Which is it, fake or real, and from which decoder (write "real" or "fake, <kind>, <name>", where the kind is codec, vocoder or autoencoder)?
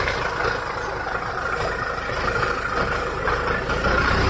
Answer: real